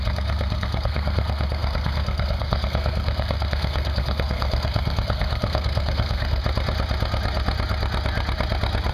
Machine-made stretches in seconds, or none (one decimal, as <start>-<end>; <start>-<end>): 0.0-6.4